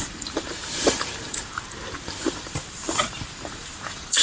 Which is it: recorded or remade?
remade